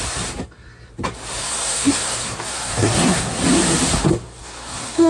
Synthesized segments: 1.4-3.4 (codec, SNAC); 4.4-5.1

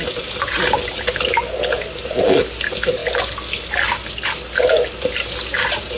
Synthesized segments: none

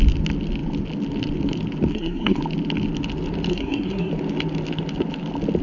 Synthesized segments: 1.9-2.4 (codec, SNAC); 3.5-4.1

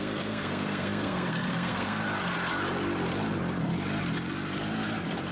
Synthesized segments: 0.0-2.0 (codec, SNAC)

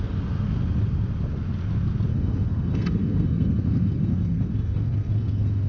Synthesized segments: 2.1-5.7 (codec, SNAC)

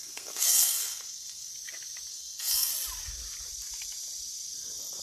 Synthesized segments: 0.0-1.5 (codec, SNAC); 2.1-2.7

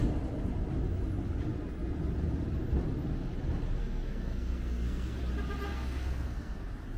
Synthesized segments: 3.8-5.2 (codec, SNAC); 5.7-6.6

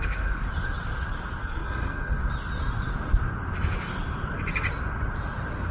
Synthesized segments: 0.0-0.4 (codec, SNAC); 1.4-2.2